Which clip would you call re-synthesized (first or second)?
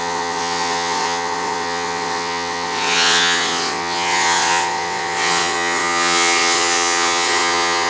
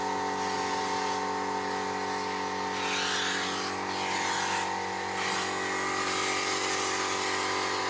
first